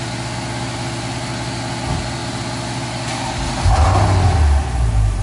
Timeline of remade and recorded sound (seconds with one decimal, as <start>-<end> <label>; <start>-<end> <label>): 0.0-5.2 recorded